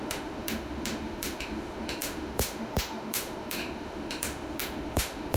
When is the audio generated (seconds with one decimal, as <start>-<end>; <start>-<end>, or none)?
0.0-5.4